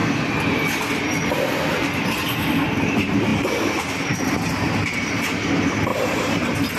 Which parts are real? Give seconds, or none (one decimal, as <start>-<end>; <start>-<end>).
0.0-6.8